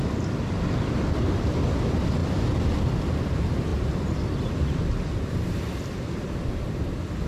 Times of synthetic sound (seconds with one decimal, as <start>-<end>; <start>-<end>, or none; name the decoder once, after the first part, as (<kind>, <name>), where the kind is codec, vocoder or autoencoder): none